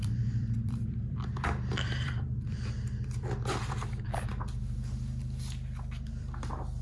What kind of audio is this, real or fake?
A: fake